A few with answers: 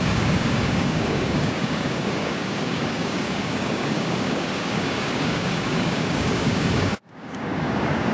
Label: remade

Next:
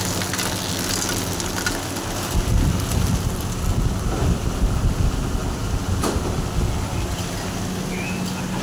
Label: recorded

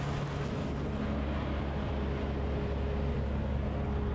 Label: recorded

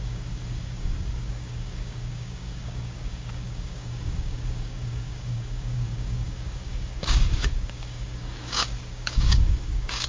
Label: remade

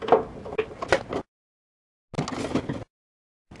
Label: recorded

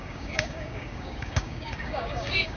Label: remade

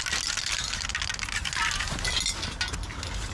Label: recorded